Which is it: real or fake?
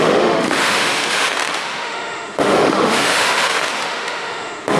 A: fake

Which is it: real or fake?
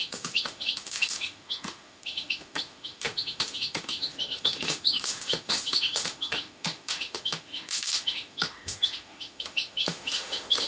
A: fake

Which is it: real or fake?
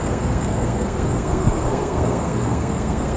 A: fake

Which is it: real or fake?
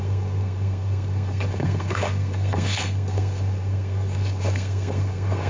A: fake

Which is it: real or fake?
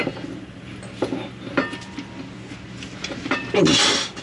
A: real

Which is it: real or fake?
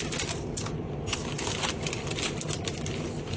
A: real